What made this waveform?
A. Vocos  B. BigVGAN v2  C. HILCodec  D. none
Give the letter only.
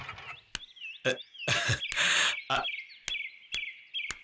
D